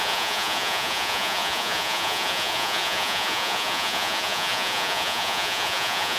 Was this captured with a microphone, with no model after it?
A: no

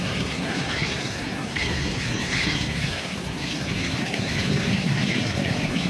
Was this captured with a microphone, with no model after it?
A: no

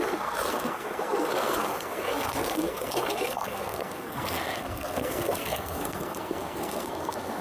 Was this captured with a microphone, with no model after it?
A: no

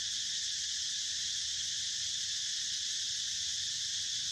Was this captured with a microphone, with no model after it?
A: yes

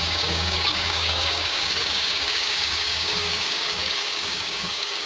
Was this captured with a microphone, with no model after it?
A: no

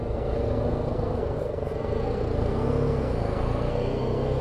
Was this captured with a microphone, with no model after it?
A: no